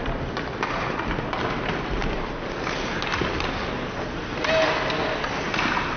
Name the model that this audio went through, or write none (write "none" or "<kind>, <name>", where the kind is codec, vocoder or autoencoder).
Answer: none